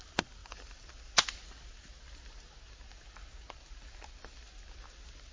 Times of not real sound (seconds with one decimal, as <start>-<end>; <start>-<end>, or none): none